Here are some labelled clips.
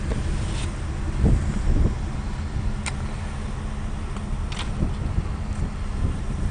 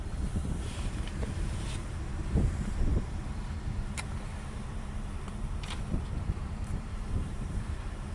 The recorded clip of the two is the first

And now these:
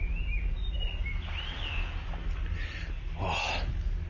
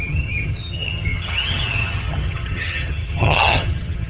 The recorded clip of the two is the first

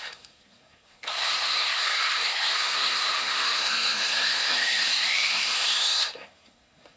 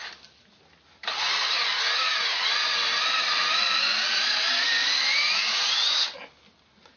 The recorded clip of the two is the second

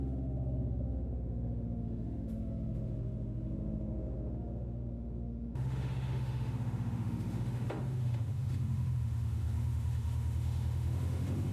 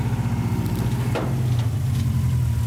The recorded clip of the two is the second